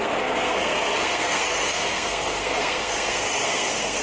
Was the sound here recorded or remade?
remade